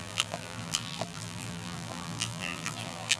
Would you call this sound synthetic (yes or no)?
yes